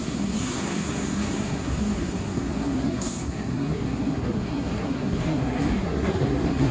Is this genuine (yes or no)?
no